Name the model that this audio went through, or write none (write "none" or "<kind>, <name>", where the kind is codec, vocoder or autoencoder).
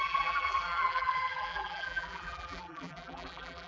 vocoder, BigVGAN v2